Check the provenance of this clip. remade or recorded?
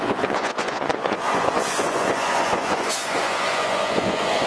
remade